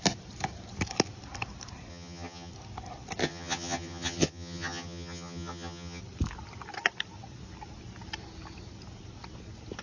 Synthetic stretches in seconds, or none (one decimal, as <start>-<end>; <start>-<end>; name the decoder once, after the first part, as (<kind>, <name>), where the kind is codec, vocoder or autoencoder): 1.9-2.5 (vocoder, HiFi-GAN); 3.2-6.0